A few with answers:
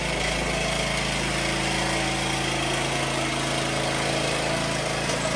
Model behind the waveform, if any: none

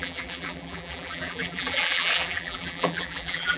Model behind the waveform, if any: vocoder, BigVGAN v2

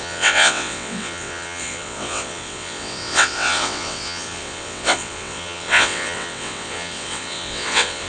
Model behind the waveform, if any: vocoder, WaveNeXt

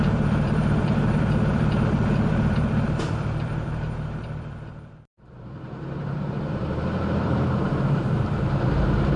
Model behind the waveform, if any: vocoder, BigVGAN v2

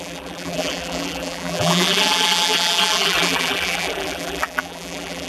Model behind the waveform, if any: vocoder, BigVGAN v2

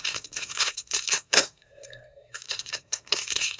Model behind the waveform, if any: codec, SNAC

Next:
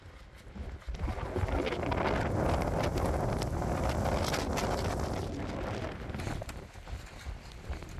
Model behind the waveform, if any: none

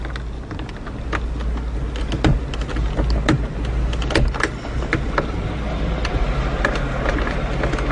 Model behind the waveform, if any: none